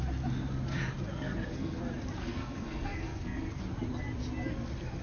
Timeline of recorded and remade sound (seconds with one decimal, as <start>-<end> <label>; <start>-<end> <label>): 0.0-1.1 recorded; 1.1-1.8 remade; 1.8-2.2 recorded; 2.2-3.6 remade; 3.6-5.0 recorded